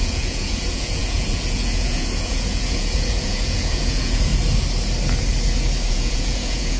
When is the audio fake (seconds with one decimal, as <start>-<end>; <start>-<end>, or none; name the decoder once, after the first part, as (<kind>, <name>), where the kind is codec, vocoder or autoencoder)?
0.0-4.3 (vocoder, Vocos); 5.9-6.8